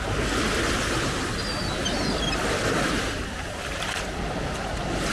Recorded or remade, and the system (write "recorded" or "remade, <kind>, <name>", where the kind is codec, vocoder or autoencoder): recorded